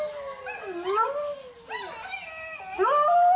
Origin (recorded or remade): recorded